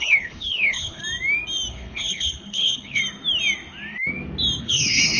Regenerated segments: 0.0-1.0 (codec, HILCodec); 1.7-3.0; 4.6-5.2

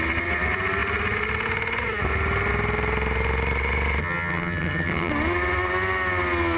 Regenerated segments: 4.0-5.1 (vocoder, HiFi-GAN)

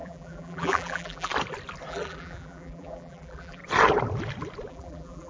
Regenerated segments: 0.0-1.3 (vocoder, BigVGAN v2); 1.9-3.6; 4.7-5.3

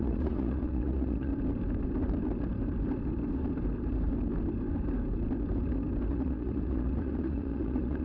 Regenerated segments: 0.0-1.3 (vocoder, Vocos); 6.1-8.0